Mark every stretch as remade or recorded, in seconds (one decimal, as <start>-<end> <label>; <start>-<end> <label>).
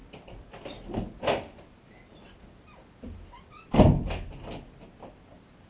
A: 0.0-5.7 recorded